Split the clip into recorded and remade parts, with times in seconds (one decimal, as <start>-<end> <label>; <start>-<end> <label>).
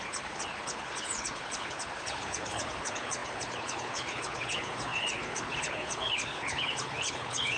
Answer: 0.0-7.6 remade